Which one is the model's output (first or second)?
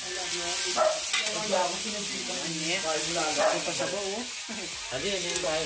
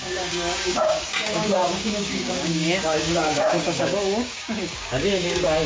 second